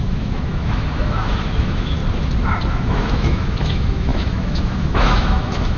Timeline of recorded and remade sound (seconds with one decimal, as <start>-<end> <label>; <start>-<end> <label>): 0.0-2.0 remade; 2.0-2.7 recorded; 2.7-5.8 remade